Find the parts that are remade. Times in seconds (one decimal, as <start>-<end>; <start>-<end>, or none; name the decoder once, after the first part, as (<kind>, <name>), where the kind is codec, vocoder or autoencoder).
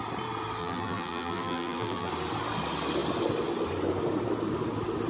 0.6-2.1 (vocoder, BigVGAN v2)